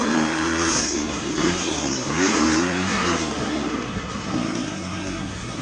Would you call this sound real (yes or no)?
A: no